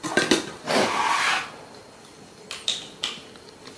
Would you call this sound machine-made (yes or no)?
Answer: no